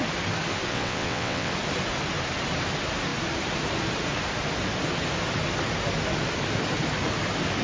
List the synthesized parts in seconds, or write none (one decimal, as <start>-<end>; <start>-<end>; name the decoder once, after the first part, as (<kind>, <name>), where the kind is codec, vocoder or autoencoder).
0.7-1.5 (vocoder, WaveNeXt)

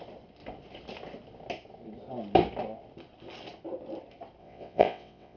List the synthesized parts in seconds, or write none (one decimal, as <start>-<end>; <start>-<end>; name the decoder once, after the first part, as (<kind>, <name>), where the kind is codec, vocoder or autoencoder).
4.4-5.4 (vocoder, WaveNeXt)